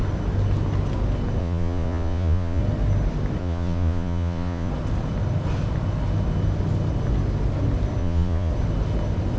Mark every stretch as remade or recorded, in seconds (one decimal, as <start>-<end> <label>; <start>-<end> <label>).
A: 0.0-1.4 recorded; 1.4-2.6 remade; 2.6-3.4 recorded; 3.4-4.7 remade; 4.7-8.0 recorded; 8.0-8.5 remade; 8.5-9.4 recorded